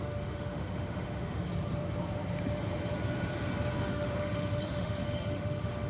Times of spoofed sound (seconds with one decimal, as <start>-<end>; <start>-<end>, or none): 0.0-1.5; 3.8-5.9